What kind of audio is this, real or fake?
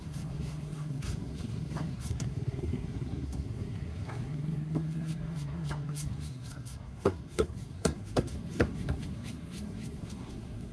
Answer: fake